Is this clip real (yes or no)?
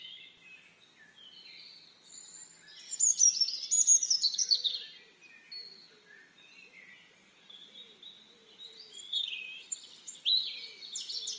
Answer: yes